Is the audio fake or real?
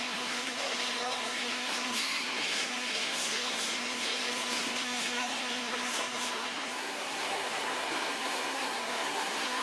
fake